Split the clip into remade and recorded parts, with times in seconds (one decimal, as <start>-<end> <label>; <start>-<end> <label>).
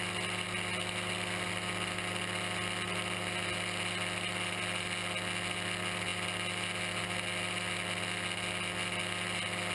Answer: 0.0-9.7 recorded